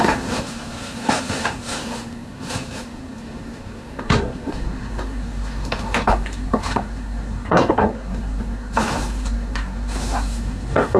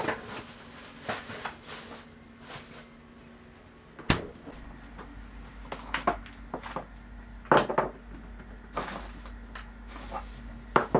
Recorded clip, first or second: second